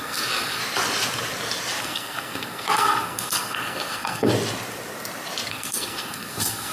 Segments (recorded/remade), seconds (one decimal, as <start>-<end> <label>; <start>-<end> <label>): 0.0-0.6 remade; 0.6-1.8 recorded; 1.8-4.3 remade; 4.3-5.5 recorded; 5.5-6.7 remade